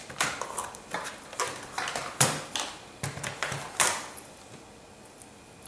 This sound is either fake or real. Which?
real